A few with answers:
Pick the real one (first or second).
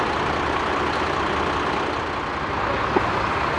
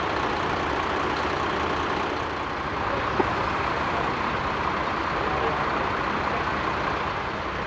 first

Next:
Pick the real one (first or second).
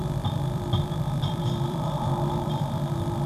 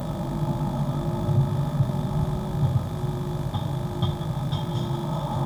second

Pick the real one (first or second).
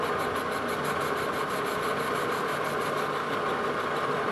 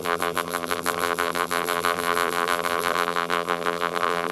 first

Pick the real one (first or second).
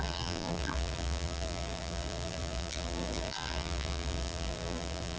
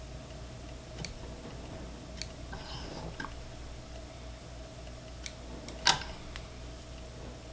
second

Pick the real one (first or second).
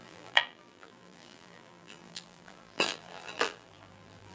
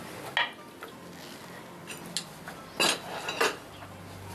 second